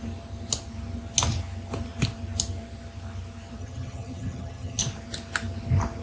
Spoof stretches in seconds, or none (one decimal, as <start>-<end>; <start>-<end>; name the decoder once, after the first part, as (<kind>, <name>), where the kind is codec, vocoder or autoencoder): 3.6-4.8 (vocoder, HiFi-GAN)